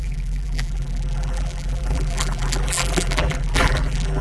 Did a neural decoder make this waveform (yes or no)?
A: yes